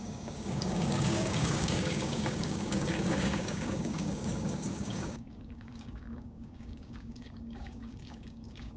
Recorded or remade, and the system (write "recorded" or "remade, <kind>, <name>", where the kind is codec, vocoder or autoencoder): remade, codec, DAC